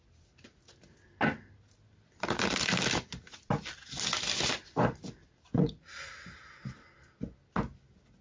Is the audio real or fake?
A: real